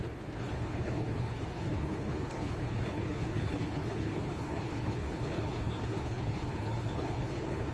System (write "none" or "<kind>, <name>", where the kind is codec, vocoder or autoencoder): codec, HILCodec